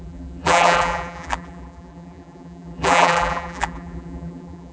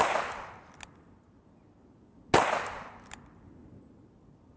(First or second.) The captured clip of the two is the second